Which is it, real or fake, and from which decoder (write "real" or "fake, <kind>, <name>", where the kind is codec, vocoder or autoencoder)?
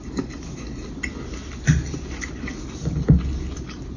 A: real